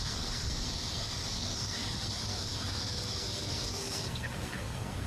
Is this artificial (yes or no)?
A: yes